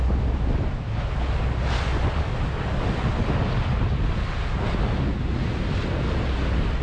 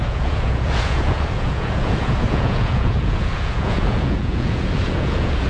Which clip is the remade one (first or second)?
second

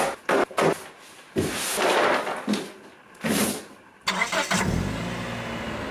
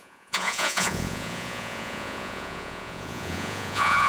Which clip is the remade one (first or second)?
second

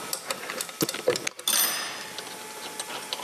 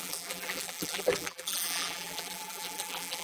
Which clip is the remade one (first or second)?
second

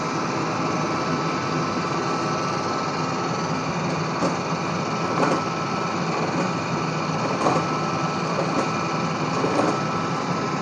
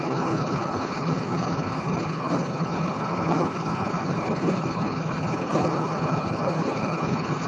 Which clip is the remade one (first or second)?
second